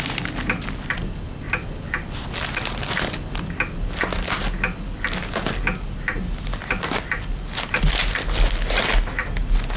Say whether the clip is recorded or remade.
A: recorded